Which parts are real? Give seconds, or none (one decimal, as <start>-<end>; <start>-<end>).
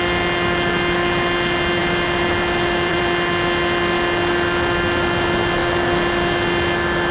0.0-1.8; 3.0-7.1